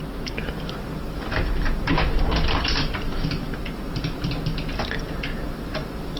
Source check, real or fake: fake